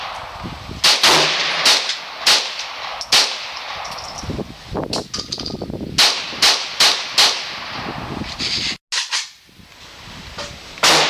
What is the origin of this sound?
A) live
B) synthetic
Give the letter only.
A